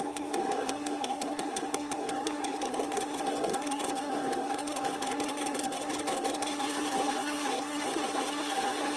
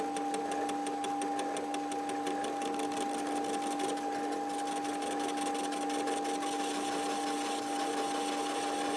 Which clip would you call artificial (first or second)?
first